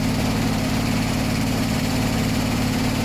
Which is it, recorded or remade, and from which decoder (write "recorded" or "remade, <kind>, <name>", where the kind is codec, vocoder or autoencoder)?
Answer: remade, vocoder, BigVGAN v2